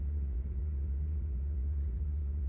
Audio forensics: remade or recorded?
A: remade